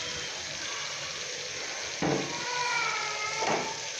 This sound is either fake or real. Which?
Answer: real